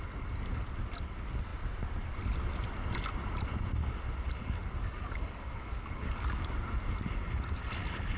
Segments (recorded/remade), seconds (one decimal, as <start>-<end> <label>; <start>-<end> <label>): 0.0-4.4 recorded; 4.4-6.5 remade; 6.5-8.2 recorded